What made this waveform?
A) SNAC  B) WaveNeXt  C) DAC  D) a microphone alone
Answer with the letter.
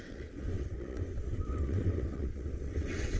B